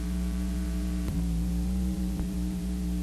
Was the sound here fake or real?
fake